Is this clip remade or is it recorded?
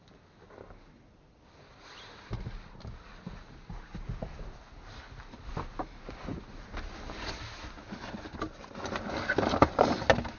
recorded